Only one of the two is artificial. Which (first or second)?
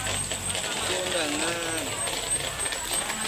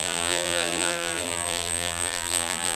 second